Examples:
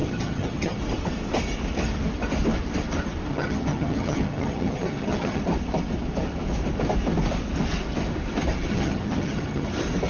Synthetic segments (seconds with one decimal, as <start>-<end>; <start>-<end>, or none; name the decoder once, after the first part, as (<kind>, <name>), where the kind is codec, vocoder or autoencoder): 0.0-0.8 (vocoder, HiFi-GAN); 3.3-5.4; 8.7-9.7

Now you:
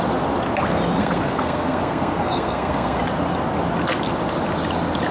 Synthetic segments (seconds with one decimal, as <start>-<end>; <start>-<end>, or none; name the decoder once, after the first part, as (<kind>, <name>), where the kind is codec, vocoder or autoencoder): 1.0-3.0 (codec, SNAC)

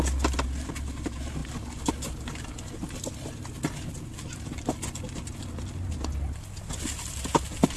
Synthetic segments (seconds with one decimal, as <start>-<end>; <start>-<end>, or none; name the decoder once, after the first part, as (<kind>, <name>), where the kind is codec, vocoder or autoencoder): none

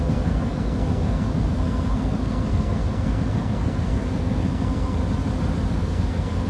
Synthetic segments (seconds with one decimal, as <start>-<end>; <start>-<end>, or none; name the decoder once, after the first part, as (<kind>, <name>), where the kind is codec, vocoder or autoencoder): 0.0-5.0 (codec, SNAC); 5.7-6.5

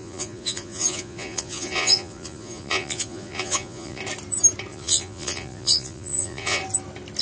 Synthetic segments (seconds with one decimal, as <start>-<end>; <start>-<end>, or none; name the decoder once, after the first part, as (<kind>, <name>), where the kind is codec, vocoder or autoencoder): 0.0-4.0 (vocoder, Vocos); 4.7-6.6

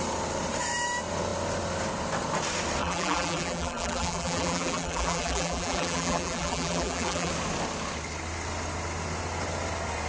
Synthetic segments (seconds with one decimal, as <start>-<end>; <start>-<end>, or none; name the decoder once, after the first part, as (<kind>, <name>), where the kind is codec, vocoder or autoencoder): 2.8-7.3 (vocoder, BigVGAN v2)

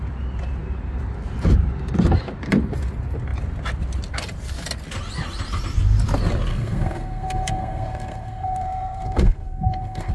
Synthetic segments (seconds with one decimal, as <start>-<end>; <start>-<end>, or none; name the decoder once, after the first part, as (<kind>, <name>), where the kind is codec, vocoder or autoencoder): 6.5-10.1 (codec, SNAC)

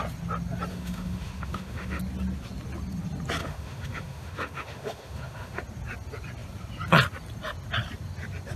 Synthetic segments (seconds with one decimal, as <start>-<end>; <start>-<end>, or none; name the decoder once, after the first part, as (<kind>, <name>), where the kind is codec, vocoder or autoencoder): 0.7-2.0 (autoencoder, DAC-VAE); 3.4-5.6